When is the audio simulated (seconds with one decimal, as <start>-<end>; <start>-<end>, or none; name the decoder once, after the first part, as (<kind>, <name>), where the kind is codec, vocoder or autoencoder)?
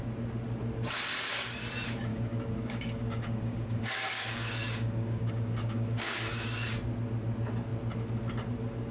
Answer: 2.1-6.7 (codec, DAC)